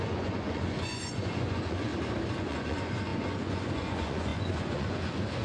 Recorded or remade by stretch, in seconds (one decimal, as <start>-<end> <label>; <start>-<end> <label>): 0.0-1.9 remade; 1.9-2.4 recorded; 2.4-5.4 remade